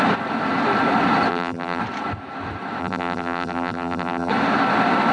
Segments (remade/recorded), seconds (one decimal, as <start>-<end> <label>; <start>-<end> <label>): 0.0-1.3 recorded; 1.3-1.8 remade; 1.8-2.8 recorded; 2.8-4.3 remade; 4.3-5.1 recorded